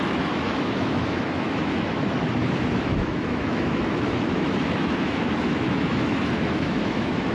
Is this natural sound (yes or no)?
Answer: no